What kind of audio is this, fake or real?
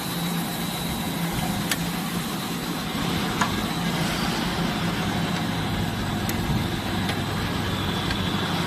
real